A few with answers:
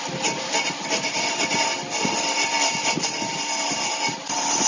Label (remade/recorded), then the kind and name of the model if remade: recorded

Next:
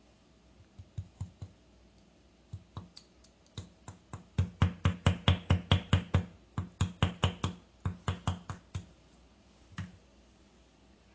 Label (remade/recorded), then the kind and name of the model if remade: recorded